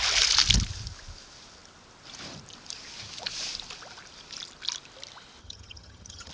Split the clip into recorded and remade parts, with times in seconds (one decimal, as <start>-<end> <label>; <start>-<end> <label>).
0.0-5.4 recorded; 5.4-6.3 remade